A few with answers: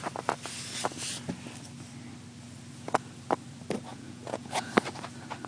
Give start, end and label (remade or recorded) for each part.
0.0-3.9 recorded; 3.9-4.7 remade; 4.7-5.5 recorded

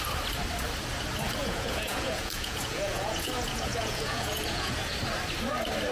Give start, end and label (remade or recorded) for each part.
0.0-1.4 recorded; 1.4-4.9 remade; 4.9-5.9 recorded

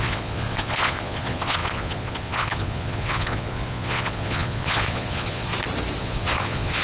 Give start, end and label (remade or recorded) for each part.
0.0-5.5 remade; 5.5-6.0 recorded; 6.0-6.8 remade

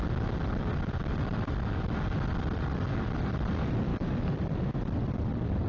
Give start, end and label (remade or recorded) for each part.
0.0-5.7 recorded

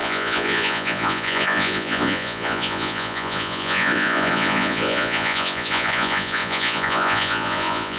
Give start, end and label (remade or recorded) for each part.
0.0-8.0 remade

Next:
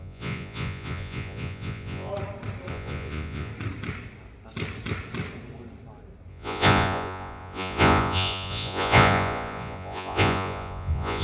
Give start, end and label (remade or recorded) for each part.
0.0-2.1 remade; 2.1-2.7 recorded; 2.7-3.5 remade; 3.5-6.3 recorded; 6.3-11.2 remade

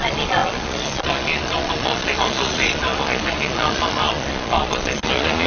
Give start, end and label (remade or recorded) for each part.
0.0-5.5 remade